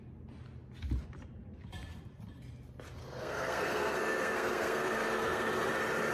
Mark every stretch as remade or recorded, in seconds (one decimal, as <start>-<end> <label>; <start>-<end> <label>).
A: 0.0-3.0 recorded; 3.0-5.5 remade; 5.5-6.1 recorded

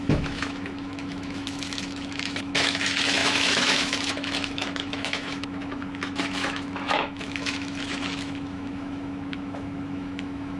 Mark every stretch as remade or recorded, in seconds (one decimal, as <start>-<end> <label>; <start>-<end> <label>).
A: 0.0-10.6 remade

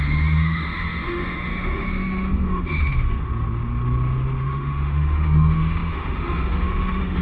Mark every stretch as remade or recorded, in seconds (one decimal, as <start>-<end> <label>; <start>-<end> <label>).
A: 0.0-3.3 remade; 3.3-4.4 recorded; 4.4-7.2 remade